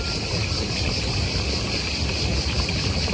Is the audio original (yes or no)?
yes